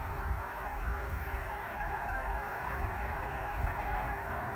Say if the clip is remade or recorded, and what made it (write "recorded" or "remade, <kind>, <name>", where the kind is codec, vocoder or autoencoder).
remade, codec, DAC